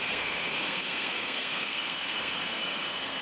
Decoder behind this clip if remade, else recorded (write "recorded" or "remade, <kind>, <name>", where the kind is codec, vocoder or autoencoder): remade, codec, SNAC